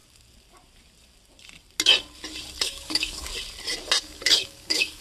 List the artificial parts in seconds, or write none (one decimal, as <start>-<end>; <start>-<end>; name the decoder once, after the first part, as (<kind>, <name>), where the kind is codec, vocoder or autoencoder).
2.6-3.3 (codec, DAC); 4.0-5.0